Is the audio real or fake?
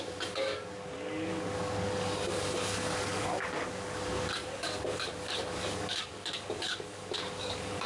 fake